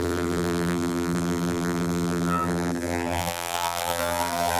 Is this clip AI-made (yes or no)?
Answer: yes